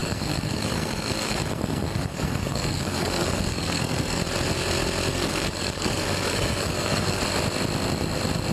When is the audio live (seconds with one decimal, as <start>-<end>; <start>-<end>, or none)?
4.2-5.1; 7.2-8.5